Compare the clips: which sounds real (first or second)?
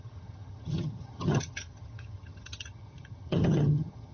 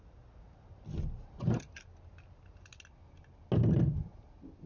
second